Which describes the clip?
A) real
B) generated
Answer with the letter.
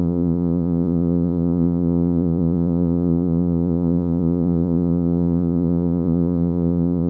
B